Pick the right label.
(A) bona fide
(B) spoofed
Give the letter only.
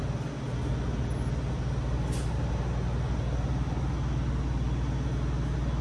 A